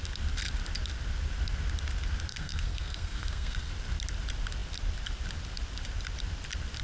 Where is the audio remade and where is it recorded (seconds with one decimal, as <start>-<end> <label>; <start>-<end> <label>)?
0.0-2.3 recorded; 2.3-3.7 remade; 3.7-6.8 recorded